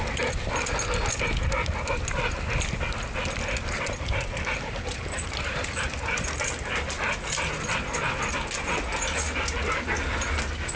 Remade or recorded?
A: recorded